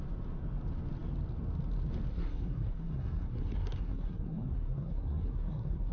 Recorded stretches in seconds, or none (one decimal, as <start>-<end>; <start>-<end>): 0.0-2.1